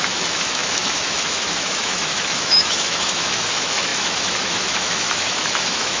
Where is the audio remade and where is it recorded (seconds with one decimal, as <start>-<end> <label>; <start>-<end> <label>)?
0.0-6.0 remade